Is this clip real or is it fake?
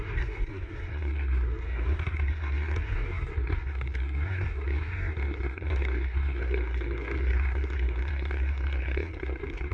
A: fake